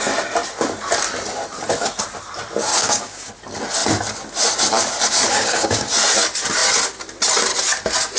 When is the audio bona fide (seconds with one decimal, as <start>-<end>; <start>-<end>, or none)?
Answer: 0.0-2.7; 3.3-5.3; 5.9-8.2